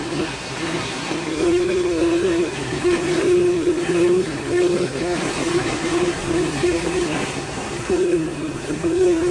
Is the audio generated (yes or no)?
yes